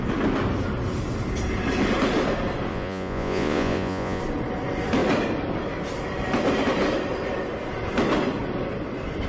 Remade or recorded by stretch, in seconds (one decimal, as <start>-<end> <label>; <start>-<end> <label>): 0.0-2.7 recorded; 2.7-4.2 remade; 4.2-9.3 recorded